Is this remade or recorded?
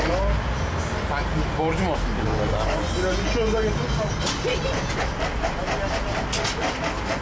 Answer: recorded